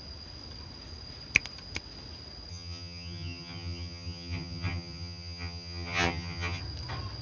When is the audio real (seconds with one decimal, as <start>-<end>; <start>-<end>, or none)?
0.0-2.5; 6.6-7.2